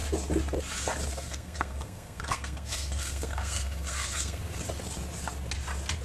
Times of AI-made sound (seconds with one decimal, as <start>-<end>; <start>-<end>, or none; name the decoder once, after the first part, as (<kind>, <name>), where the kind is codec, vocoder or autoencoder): 1.1-4.4 (codec, SNAC)